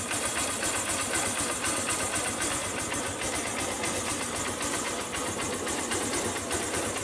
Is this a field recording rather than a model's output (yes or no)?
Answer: yes